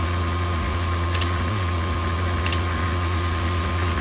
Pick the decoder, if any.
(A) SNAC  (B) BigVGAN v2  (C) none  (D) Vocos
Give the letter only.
D